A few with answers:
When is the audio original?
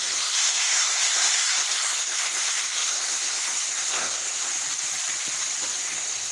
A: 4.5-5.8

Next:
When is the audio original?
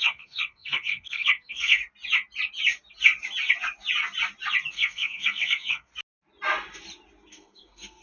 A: 1.8-4.7; 5.9-7.3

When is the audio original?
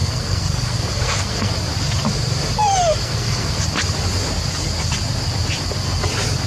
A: 1.5-3.0; 3.6-6.5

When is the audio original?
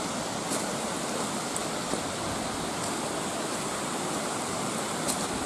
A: 0.0-5.5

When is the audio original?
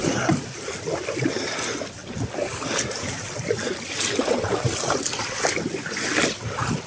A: 0.0-6.9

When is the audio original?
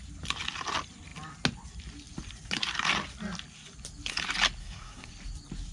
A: 0.0-4.6; 5.1-5.7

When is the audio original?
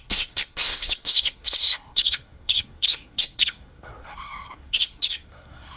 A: none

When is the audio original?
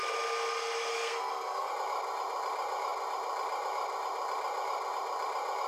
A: 0.0-0.9; 1.7-5.7